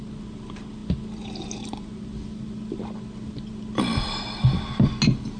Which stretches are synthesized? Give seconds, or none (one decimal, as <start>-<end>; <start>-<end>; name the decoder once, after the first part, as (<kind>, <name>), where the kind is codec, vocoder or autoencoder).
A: none